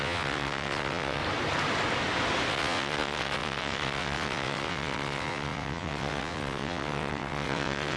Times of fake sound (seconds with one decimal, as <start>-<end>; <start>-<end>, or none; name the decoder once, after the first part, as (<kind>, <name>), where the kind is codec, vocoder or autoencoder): 0.0-1.2 (vocoder, WaveNeXt); 2.5-8.0